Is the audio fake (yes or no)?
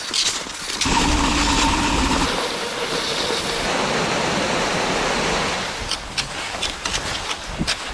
no